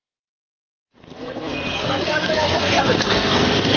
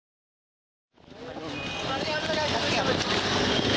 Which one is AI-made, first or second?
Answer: first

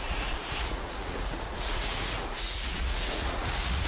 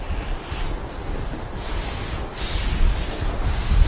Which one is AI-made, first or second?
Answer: first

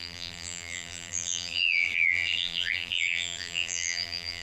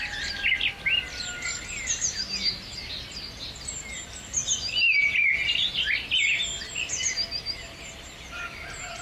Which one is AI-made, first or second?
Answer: first